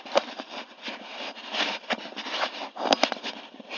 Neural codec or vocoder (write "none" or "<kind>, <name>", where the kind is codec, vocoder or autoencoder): none